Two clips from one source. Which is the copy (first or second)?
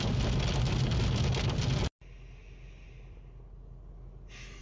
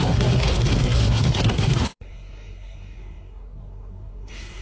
second